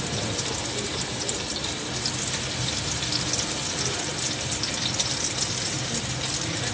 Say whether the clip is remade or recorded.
recorded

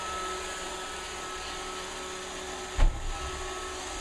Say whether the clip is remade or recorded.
recorded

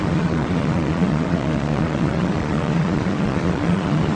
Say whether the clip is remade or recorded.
remade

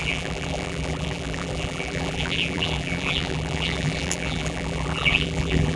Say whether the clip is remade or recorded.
remade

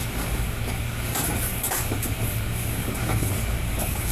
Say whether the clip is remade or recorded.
remade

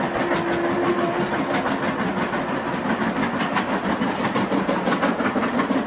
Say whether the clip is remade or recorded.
recorded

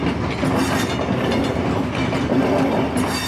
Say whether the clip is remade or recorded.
recorded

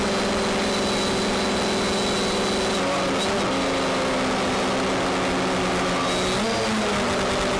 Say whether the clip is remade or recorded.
recorded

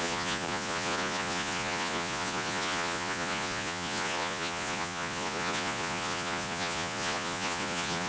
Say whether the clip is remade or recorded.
remade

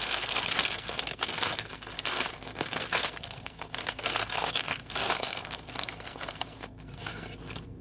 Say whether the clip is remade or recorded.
remade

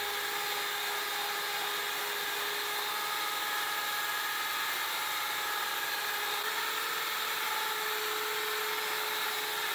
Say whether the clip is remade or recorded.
recorded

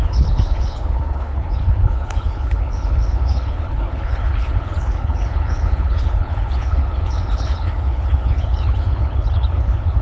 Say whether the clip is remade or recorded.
remade